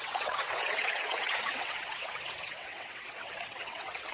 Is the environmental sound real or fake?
fake